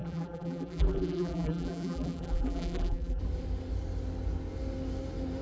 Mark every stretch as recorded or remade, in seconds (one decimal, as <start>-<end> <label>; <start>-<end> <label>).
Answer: 0.0-3.2 remade; 3.2-5.4 recorded